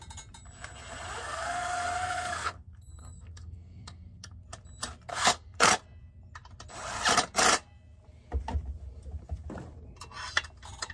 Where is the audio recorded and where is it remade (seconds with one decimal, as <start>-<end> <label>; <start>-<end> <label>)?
0.0-1.2 recorded; 1.2-4.4 remade; 4.4-5.1 recorded; 5.1-5.7 remade; 5.7-10.9 recorded